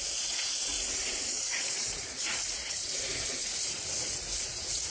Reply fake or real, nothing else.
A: fake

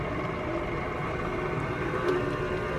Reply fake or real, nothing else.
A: real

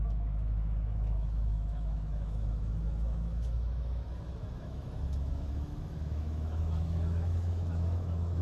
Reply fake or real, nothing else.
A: fake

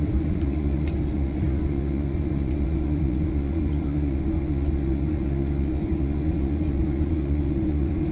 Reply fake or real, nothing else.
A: fake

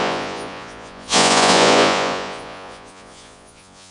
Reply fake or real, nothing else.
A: fake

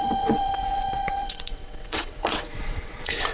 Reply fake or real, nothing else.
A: fake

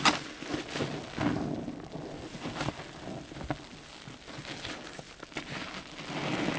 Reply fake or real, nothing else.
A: real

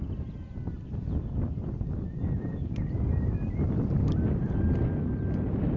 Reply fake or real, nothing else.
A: real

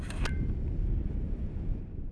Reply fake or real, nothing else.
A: real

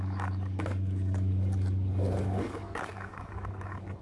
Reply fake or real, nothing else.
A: fake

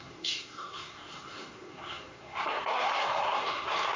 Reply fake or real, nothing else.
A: fake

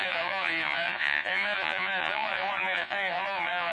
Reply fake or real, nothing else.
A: fake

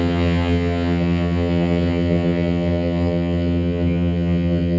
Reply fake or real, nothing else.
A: fake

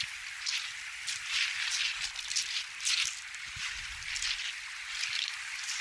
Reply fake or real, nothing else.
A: real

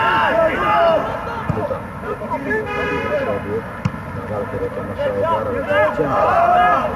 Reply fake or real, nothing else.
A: real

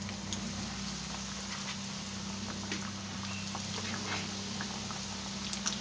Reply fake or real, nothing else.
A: real